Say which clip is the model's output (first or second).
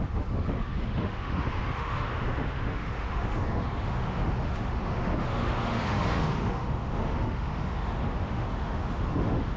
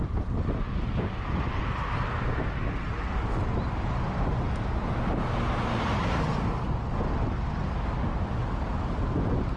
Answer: first